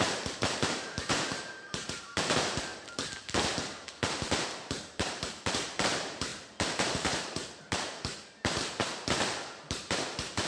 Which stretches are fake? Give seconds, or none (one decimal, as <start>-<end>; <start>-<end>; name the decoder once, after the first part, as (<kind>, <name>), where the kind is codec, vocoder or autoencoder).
0.0-2.7 (vocoder, BigVGAN v2); 3.2-10.5